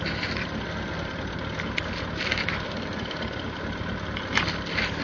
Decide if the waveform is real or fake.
real